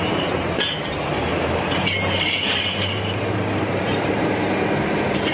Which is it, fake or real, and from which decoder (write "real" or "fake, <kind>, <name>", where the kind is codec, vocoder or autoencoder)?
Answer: fake, vocoder, BigVGAN v2